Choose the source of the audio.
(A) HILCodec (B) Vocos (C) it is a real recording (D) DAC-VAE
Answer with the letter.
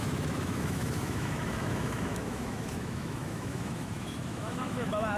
D